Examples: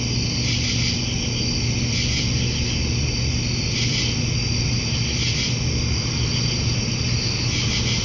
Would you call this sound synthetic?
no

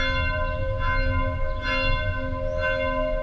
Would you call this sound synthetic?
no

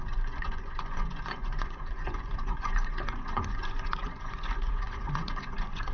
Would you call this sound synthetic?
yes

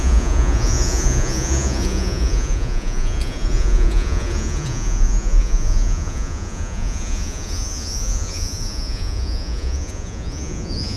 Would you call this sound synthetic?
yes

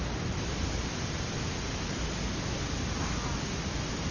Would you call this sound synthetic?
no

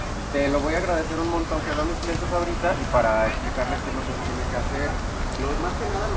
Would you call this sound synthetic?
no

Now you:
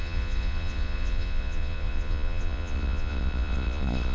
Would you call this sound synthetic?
yes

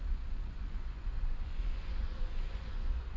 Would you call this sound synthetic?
yes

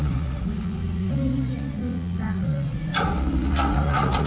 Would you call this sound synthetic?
yes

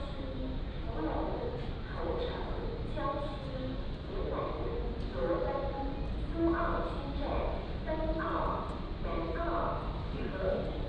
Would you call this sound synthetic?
no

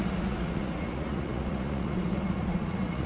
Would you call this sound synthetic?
yes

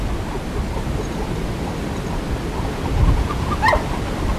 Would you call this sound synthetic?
no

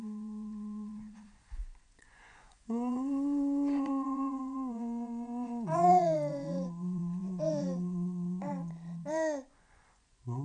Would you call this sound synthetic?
yes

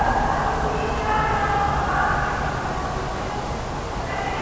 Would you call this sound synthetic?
no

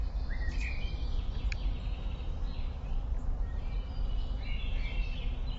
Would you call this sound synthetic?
no